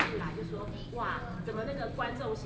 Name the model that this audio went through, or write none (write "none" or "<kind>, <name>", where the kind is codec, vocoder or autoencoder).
none